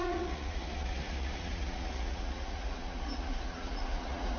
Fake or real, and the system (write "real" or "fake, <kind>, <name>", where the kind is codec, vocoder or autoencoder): fake, vocoder, Vocos